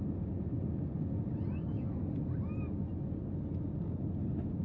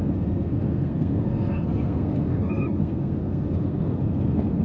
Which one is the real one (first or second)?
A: first